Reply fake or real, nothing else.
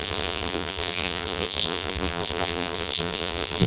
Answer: fake